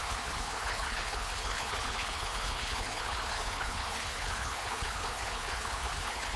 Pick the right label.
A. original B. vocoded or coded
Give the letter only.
B